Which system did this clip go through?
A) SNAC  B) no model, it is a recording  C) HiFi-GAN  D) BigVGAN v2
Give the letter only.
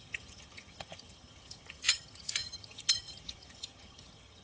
C